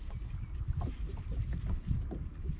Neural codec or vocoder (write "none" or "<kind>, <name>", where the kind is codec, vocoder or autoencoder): none